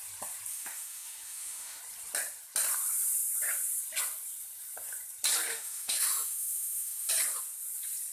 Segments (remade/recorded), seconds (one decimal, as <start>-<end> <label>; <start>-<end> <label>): 0.0-0.5 recorded; 0.5-1.8 remade; 1.8-5.5 recorded; 5.5-7.1 remade; 7.1-8.1 recorded